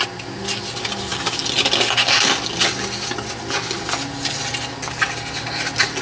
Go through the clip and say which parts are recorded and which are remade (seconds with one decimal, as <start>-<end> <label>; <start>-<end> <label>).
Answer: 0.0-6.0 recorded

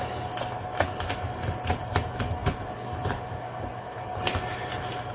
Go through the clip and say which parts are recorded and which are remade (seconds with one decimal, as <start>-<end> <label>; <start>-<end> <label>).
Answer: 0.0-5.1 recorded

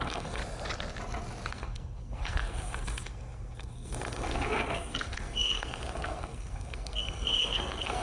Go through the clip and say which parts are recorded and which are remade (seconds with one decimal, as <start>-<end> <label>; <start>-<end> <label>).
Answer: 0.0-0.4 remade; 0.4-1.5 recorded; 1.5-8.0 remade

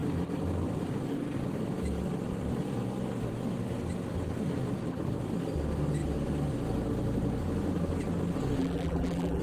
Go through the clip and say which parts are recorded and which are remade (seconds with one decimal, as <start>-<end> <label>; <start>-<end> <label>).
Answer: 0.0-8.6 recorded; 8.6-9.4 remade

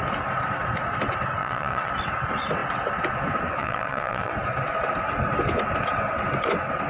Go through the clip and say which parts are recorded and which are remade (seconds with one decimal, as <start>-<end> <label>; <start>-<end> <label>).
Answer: 0.0-1.4 recorded; 1.4-1.9 remade; 1.9-3.6 recorded; 3.6-4.3 remade; 4.3-6.9 recorded

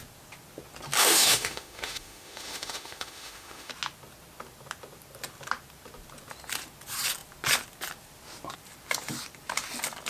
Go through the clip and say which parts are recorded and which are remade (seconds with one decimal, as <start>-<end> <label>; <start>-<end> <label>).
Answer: 0.0-1.0 recorded; 1.0-3.7 remade; 3.7-10.1 recorded